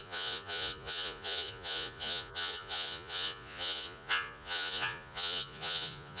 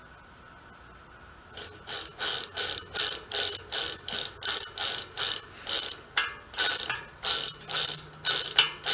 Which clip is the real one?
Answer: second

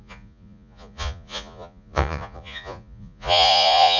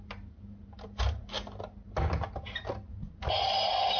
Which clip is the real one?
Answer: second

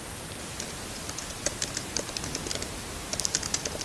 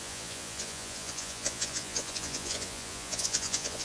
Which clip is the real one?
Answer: first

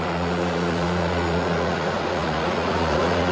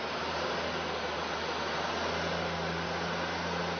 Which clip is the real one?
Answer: second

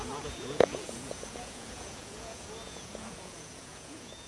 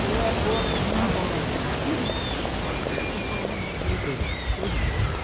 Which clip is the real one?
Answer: second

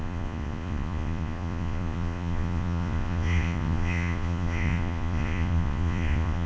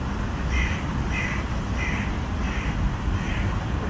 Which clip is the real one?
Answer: second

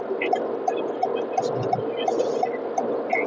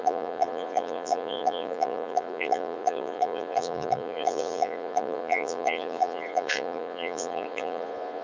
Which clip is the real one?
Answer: first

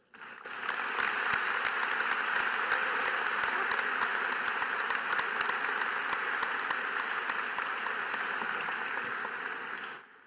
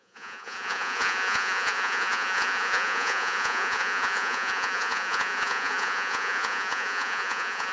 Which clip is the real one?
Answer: first